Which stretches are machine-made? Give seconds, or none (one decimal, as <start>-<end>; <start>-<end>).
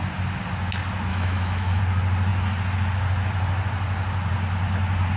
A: 1.1-1.8